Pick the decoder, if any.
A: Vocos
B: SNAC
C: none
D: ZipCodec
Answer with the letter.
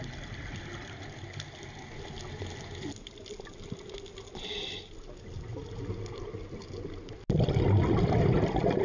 C